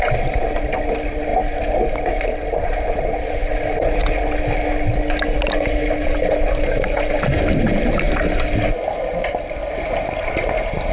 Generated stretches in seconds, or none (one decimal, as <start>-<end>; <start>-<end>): none